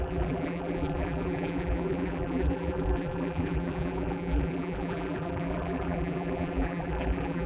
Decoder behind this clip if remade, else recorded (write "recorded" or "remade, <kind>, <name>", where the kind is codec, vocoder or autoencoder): remade, vocoder, BigVGAN v2